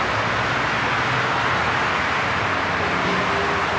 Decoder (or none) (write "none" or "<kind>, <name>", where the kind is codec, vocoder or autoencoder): none